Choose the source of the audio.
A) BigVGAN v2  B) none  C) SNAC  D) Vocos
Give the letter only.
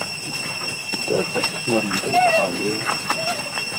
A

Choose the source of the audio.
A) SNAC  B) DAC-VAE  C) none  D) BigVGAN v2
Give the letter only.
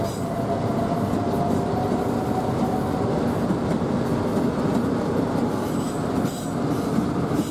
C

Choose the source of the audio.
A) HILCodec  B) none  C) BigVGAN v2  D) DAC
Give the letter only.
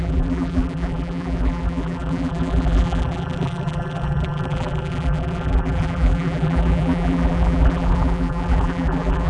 C